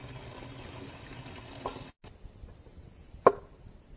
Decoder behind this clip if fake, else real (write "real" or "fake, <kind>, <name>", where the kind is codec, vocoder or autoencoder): real